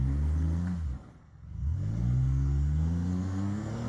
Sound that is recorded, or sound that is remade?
remade